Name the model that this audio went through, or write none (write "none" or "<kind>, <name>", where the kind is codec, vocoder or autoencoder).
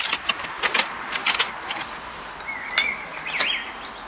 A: none